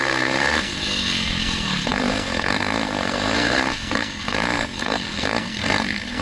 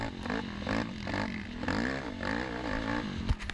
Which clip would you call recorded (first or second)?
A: second